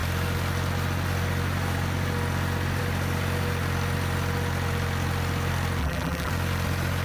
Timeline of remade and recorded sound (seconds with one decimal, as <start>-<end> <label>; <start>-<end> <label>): 0.0-5.8 recorded; 5.8-6.3 remade; 6.3-7.0 recorded

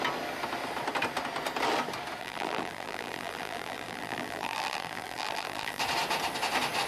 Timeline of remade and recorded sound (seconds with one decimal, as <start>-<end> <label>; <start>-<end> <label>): 0.0-2.2 recorded; 2.2-5.8 remade; 5.8-6.9 recorded

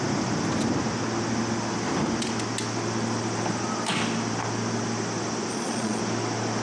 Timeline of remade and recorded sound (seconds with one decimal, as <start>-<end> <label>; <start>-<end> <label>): 0.0-5.5 recorded; 5.5-6.0 remade; 6.0-6.6 recorded

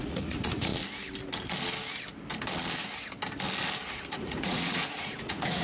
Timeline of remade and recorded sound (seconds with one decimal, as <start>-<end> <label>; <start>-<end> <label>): 0.0-0.7 remade; 0.7-4.1 recorded; 4.1-5.6 remade

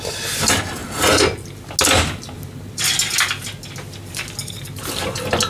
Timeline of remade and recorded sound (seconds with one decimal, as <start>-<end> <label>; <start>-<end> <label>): 0.0-5.5 recorded

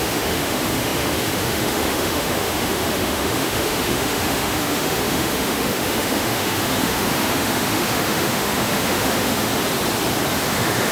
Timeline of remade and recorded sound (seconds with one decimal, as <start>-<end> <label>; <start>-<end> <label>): 0.0-9.5 remade; 9.5-10.5 recorded; 10.5-10.9 remade

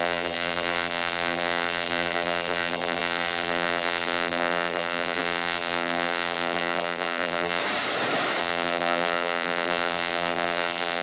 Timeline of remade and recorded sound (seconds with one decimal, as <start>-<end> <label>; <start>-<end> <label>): 0.0-7.6 remade; 7.6-8.4 recorded; 8.4-11.0 remade